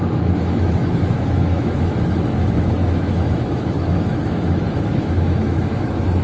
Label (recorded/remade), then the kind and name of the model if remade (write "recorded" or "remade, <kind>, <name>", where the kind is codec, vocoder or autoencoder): remade, autoencoder, DAC-VAE